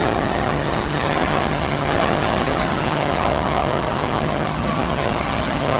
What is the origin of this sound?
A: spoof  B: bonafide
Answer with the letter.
A